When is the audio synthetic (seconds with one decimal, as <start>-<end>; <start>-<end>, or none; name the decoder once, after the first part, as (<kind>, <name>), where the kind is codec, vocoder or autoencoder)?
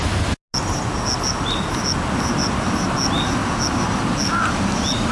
none